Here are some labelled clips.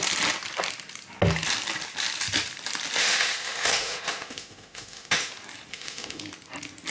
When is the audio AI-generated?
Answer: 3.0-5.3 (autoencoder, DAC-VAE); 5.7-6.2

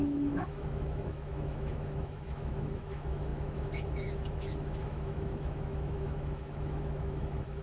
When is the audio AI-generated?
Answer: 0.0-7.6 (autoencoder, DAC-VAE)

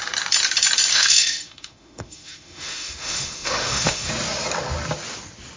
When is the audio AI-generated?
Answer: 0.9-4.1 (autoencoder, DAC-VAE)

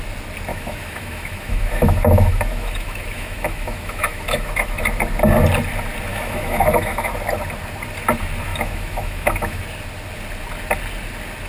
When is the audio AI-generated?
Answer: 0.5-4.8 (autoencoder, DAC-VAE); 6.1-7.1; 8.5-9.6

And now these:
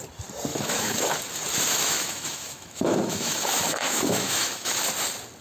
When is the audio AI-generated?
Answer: 0.5-1.1 (autoencoder, DAC-VAE); 1.7-4.9

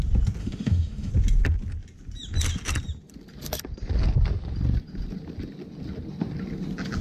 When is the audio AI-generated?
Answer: 0.4-1.1 (autoencoder, DAC-VAE)

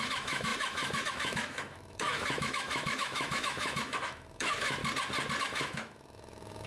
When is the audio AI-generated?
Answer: 0.0-4.8 (autoencoder, DAC-VAE); 5.4-6.7

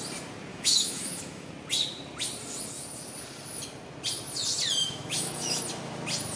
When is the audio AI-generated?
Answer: 0.5-1.5 (autoencoder, DAC-VAE); 4.8-5.6